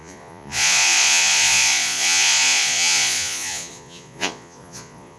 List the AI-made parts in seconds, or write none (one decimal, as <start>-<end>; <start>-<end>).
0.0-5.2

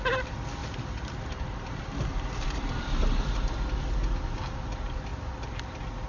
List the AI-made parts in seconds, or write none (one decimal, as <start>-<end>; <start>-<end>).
0.6-2.7

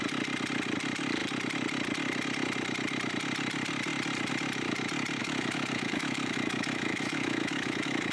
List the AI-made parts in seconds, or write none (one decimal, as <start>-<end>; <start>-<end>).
5.2-8.1

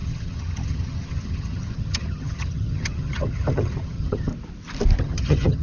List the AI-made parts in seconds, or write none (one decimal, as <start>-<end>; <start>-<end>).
0.0-4.3; 5.0-5.6

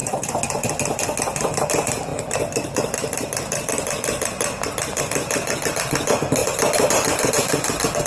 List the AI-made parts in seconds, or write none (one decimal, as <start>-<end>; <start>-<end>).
0.0-0.7; 6.4-7.3